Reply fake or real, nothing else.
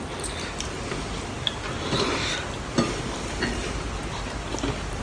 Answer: real